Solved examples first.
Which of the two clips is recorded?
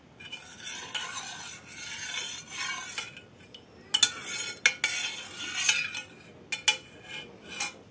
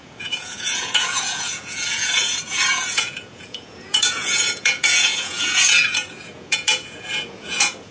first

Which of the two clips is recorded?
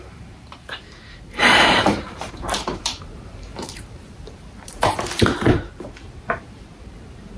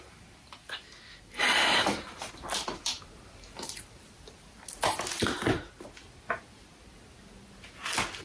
second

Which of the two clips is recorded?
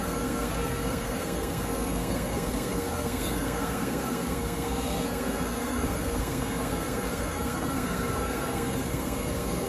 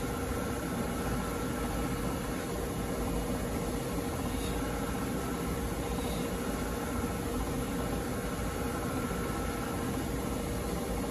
second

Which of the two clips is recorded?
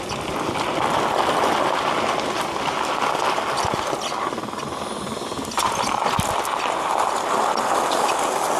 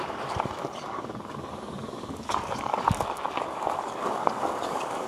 first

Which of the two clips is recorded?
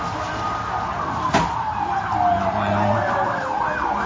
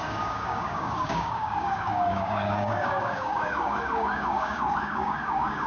first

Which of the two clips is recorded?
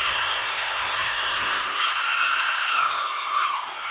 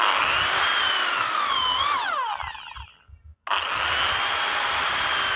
second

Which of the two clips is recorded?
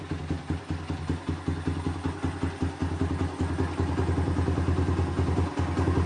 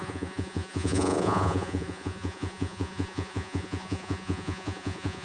first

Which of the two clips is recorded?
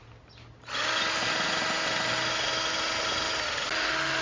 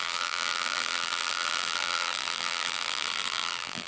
first